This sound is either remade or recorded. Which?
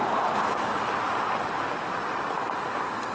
recorded